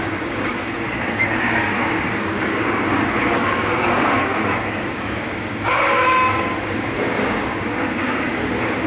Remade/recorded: remade